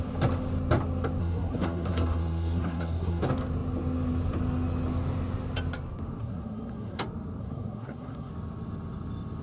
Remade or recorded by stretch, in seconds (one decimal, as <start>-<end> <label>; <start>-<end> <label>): 0.0-1.2 recorded; 1.2-3.2 remade; 3.2-6.2 recorded; 6.2-7.0 remade; 7.0-7.4 recorded; 7.4-8.3 remade; 8.3-9.4 recorded